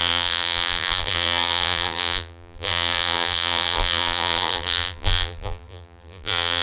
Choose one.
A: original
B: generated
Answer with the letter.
B